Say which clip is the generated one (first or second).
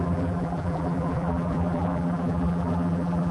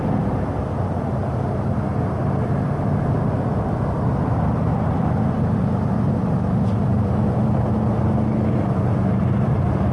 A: first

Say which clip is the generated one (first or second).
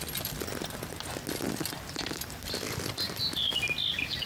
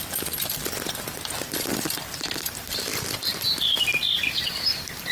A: second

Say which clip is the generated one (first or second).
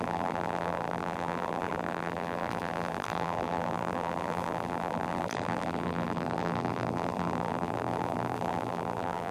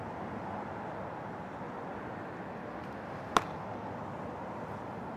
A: first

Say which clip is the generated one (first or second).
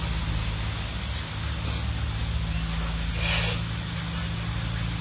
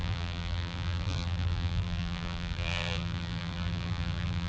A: second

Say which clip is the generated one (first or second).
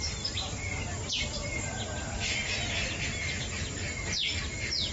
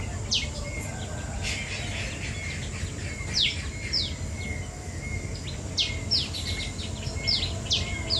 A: first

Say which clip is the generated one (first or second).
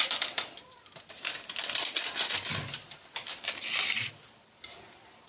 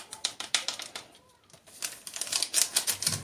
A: first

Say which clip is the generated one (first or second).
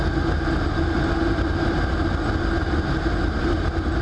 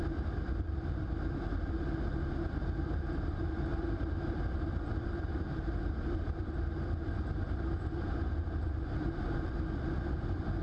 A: second